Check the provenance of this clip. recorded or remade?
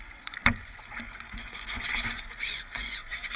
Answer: remade